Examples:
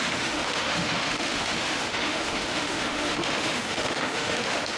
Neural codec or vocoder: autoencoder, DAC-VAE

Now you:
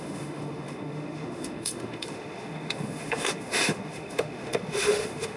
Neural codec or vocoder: autoencoder, DAC-VAE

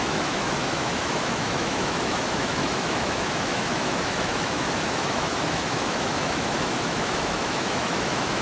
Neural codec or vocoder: autoencoder, DAC-VAE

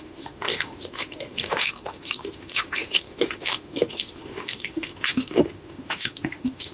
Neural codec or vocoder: autoencoder, DAC-VAE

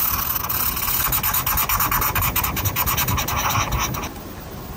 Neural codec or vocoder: none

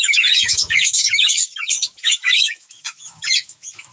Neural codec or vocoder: autoencoder, DAC-VAE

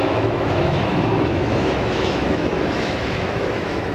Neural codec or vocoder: autoencoder, DAC-VAE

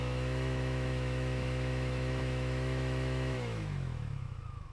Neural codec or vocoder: autoencoder, DAC-VAE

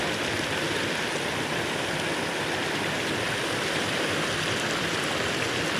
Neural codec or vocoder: none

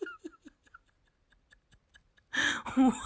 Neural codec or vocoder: none